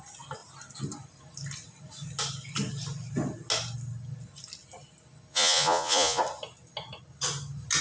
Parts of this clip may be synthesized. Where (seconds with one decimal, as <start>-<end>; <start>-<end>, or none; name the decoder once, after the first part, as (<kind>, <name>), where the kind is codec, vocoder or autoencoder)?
5.3-6.2 (vocoder, Vocos)

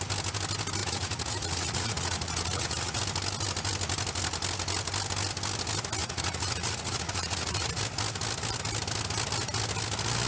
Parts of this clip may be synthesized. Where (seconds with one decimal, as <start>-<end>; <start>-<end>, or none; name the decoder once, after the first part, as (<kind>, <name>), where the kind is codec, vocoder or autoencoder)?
0.8-3.0 (vocoder, Vocos); 6.0-7.8

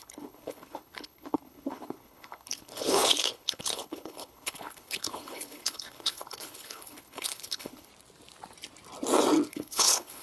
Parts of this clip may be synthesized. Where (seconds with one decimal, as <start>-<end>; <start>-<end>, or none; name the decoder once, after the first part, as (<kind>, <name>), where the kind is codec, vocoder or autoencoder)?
0.0-7.9 (codec, HILCodec); 9.5-10.2

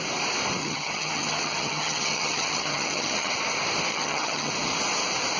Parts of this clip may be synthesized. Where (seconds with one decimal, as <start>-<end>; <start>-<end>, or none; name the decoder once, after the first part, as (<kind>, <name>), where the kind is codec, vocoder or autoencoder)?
0.6-3.3 (vocoder, HiFi-GAN); 3.9-4.5

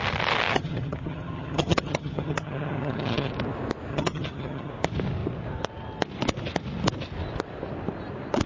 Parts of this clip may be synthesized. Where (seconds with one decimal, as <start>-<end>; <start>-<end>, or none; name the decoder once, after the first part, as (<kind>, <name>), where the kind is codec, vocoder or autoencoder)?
0.5-3.3 (vocoder, HiFi-GAN); 3.9-4.7

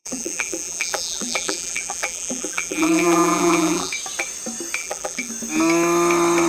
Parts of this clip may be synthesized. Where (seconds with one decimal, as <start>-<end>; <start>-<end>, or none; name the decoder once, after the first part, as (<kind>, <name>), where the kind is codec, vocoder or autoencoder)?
0.0-3.9 (vocoder, BigVGAN v2); 4.8-5.3

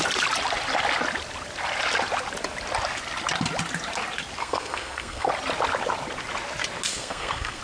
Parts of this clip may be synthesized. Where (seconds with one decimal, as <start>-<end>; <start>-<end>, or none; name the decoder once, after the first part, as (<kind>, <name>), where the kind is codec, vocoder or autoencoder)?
4.4-5.3 (codec, SNAC); 6.9-7.6

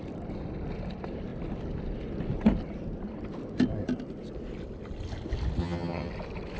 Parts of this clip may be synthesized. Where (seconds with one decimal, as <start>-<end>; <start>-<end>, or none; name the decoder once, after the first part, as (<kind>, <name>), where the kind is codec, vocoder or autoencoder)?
5.6-6.1 (vocoder, HiFi-GAN)